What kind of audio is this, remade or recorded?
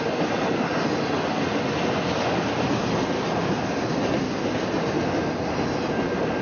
recorded